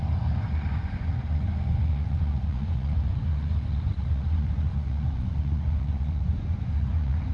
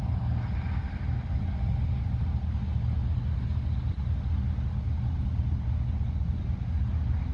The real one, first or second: second